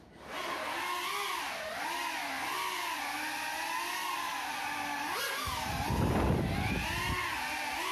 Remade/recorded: recorded